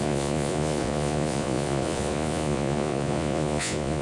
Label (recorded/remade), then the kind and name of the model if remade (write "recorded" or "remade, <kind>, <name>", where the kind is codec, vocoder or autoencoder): remade, vocoder, Vocos